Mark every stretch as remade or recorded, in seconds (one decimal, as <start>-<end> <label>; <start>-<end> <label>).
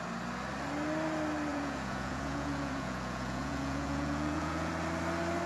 0.0-1.5 recorded; 1.5-4.7 remade; 4.7-5.5 recorded